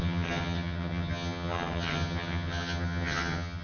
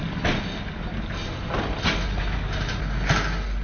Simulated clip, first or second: first